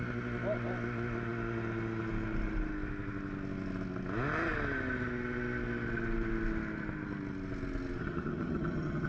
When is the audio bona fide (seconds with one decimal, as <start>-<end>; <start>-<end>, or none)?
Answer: 0.0-8.0